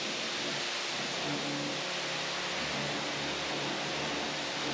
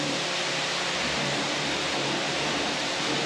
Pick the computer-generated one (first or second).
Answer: second